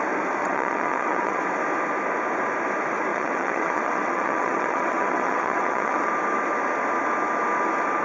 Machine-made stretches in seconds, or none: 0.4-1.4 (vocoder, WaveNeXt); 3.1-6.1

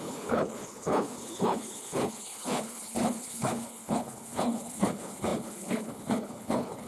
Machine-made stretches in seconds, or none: 0.0-6.9 (codec, HILCodec)

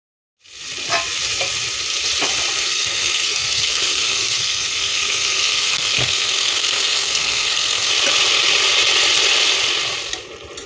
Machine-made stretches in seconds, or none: 2.7-7.9 (codec, SNAC)

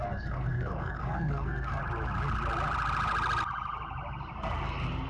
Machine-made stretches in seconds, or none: 0.0-1.8 (codec, SNAC)

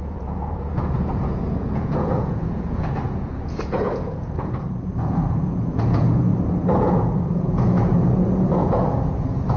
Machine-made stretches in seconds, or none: 0.0-6.3 (vocoder, Vocos); 6.8-9.6